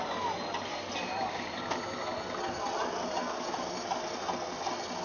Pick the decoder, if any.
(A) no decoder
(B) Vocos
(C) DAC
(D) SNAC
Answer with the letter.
A